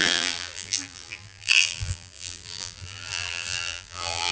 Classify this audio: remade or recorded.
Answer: remade